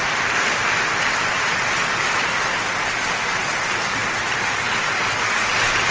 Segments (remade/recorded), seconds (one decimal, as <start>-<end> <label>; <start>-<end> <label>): 0.0-5.9 recorded